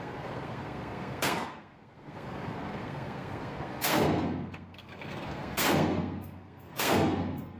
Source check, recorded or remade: remade